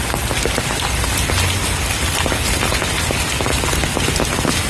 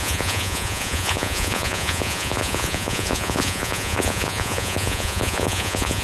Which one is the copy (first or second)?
second